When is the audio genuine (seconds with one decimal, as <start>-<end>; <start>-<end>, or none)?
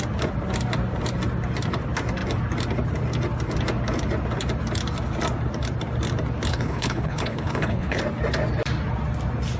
0.0-6.5; 8.0-9.6